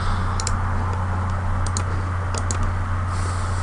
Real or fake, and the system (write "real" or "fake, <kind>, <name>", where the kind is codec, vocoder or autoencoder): real